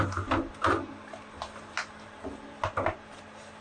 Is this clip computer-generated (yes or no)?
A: no